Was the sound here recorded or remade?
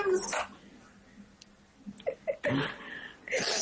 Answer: recorded